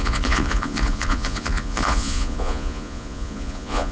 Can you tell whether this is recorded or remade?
remade